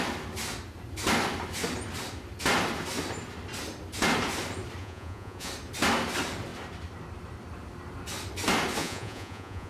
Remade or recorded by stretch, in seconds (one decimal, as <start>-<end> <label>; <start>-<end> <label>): 0.0-4.8 recorded; 4.8-5.5 remade; 5.5-8.8 recorded; 8.8-9.7 remade